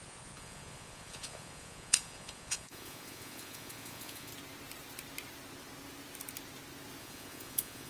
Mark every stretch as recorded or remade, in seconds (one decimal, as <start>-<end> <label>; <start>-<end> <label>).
0.0-4.3 remade; 4.3-7.0 recorded; 7.0-7.9 remade